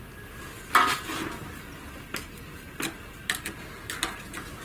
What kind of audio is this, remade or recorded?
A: recorded